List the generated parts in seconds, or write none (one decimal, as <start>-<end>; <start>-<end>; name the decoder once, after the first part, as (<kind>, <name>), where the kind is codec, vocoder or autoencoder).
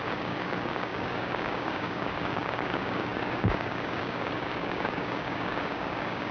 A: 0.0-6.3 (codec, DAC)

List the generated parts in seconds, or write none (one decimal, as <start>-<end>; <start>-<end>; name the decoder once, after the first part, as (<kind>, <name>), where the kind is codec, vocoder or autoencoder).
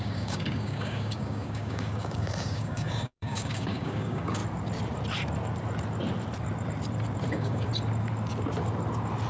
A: 0.0-4.4 (codec, DAC); 7.3-7.7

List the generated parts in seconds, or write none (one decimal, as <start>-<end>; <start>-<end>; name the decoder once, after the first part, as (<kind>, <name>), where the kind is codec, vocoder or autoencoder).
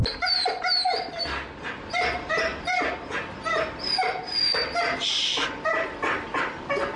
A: none